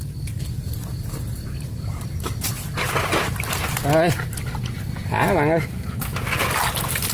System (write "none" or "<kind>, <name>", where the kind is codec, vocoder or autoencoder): none